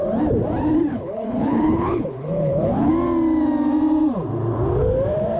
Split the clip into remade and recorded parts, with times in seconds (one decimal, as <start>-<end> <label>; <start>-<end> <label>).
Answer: 0.0-0.9 recorded; 0.9-2.9 remade; 2.9-5.4 recorded